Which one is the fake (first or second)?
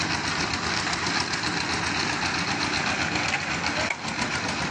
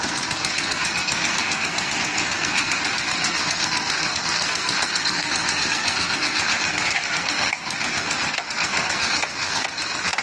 second